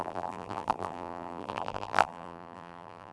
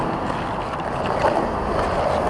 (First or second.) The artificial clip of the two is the first